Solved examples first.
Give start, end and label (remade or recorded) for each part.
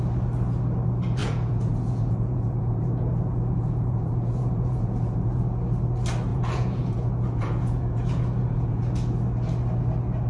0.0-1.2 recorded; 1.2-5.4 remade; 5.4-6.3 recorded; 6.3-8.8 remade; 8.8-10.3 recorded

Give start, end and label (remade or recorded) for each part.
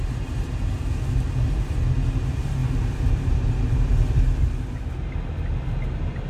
0.0-0.5 remade; 0.5-6.3 recorded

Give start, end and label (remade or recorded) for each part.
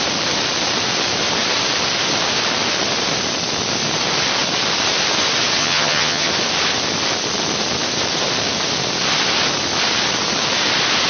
0.0-5.6 recorded; 5.6-6.3 remade; 6.3-11.1 recorded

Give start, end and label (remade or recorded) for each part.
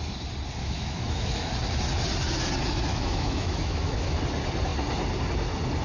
0.0-0.6 recorded; 0.6-1.5 remade; 1.5-2.9 recorded; 2.9-4.2 remade; 4.2-5.8 recorded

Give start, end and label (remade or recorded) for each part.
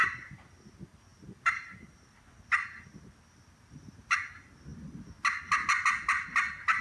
0.0-6.8 recorded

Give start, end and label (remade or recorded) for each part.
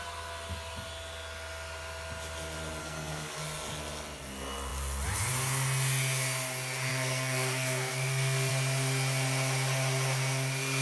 0.0-2.8 recorded; 2.8-3.4 remade; 3.4-6.9 recorded; 6.9-8.5 remade; 8.5-10.8 recorded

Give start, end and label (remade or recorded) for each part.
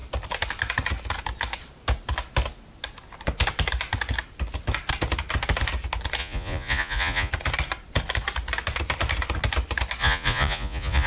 0.0-6.2 recorded; 6.2-7.3 remade; 7.3-10.0 recorded; 10.0-11.1 remade